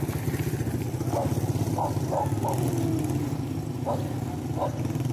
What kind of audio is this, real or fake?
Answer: real